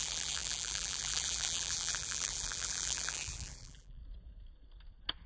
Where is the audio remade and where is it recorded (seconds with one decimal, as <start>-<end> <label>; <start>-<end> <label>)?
0.0-4.0 remade; 4.0-5.3 recorded